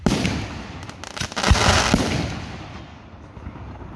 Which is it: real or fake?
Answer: real